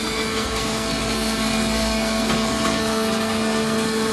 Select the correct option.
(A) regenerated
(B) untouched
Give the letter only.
A